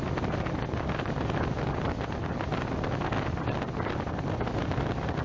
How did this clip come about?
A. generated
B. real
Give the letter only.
B